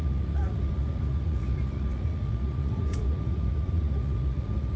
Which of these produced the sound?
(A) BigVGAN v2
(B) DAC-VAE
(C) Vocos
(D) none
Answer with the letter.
C